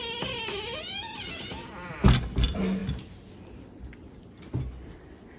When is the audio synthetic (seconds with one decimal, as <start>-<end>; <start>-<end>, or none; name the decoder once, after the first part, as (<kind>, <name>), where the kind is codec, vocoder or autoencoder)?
none